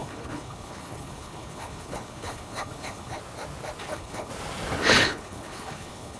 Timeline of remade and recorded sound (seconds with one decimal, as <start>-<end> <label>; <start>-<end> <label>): 0.0-3.2 remade; 3.2-3.8 recorded; 3.8-4.3 remade; 4.3-4.9 recorded; 4.9-6.2 remade